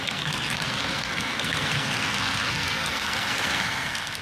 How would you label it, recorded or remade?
remade